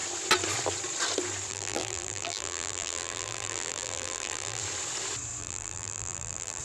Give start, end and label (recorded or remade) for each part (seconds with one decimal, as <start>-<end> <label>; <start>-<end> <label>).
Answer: 0.0-1.5 recorded; 1.5-4.6 remade; 4.6-5.4 recorded; 5.4-6.6 remade